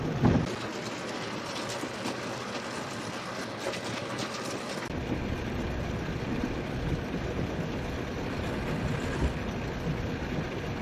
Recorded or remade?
recorded